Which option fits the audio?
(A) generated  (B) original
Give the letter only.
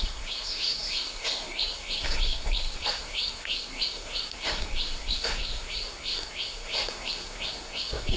A